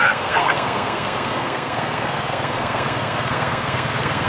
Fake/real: fake